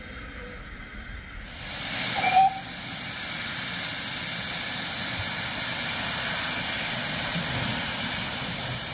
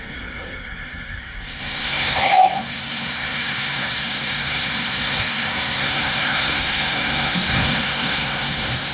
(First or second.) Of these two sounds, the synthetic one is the second